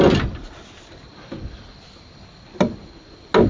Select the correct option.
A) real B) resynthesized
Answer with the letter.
A